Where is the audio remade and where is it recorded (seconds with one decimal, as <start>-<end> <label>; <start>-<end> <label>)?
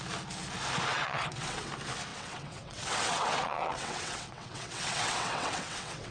0.0-0.9 recorded; 0.9-1.7 remade; 1.7-2.1 recorded; 2.1-6.1 remade